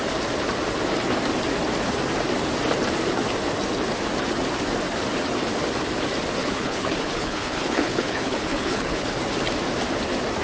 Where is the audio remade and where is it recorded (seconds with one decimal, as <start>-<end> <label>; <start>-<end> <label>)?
0.0-6.4 recorded; 6.4-9.1 remade; 9.1-10.4 recorded